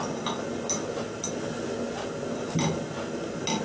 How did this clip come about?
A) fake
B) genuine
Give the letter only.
B